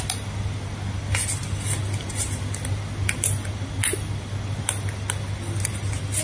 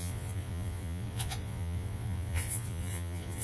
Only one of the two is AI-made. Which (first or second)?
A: second